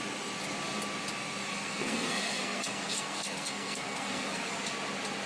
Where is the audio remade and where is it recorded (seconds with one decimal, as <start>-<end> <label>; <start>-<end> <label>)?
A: 0.0-1.5 recorded; 1.5-4.5 remade; 4.5-5.3 recorded